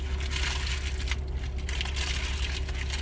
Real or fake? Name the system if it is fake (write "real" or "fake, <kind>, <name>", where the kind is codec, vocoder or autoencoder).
real